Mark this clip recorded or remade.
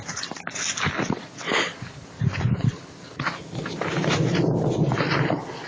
recorded